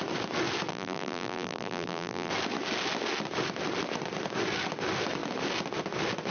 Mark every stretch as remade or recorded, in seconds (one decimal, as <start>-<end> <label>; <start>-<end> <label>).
0.0-0.7 recorded; 0.7-2.3 remade; 2.3-6.3 recorded